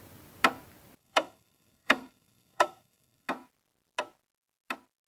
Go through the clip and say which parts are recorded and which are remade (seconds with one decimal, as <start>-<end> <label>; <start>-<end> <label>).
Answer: 0.0-1.0 recorded; 1.0-3.3 remade; 3.3-5.1 recorded